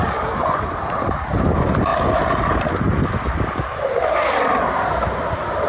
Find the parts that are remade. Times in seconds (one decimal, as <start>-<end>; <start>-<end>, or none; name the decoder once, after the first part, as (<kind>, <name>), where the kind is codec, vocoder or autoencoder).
none